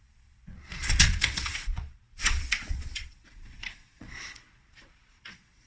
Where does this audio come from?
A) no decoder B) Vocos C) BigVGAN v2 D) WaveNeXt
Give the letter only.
B